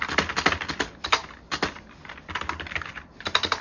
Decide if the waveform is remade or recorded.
recorded